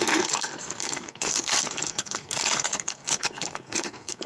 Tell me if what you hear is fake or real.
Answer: fake